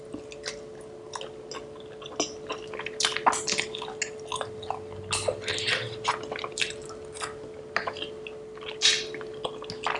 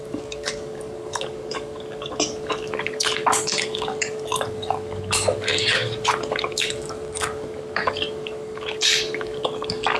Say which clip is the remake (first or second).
second